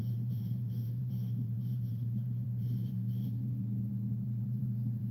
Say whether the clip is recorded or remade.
remade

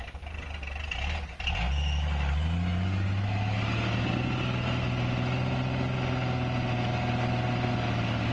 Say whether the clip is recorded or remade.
recorded